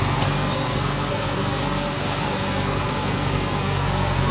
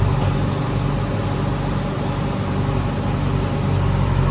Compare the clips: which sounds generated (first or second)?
first